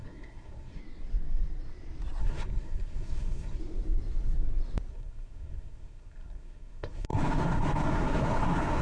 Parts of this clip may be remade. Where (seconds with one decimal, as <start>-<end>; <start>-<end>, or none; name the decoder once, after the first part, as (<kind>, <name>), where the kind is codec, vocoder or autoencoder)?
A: 0.0-0.8 (codec, SNAC); 2.2-3.6; 4.9-8.8

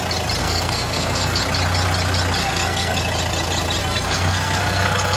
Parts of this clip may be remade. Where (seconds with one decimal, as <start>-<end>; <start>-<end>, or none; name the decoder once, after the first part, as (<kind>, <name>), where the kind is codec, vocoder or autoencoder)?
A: 0.4-1.4 (codec, SNAC); 2.4-3.0; 3.8-5.2

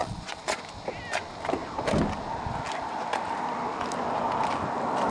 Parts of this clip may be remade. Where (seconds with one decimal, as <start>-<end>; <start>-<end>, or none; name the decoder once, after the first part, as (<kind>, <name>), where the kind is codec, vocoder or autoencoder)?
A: 0.0-0.6 (vocoder, Vocos)

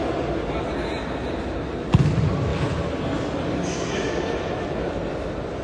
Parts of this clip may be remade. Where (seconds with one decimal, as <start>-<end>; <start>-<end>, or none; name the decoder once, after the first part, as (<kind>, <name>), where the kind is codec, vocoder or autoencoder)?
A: none

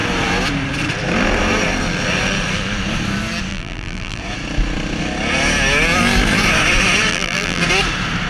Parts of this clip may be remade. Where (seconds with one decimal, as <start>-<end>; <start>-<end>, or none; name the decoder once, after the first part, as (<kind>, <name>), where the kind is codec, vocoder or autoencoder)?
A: 3.5-4.2 (vocoder, BigVGAN v2); 7.1-7.6